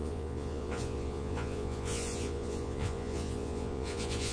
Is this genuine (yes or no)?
no